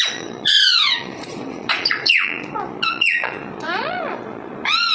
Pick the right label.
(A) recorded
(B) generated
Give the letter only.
B